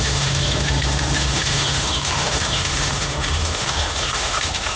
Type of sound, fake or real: fake